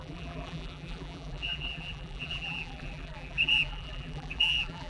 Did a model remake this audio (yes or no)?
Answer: yes